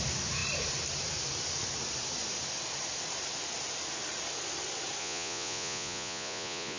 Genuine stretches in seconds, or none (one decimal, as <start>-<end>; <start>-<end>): 0.0-5.0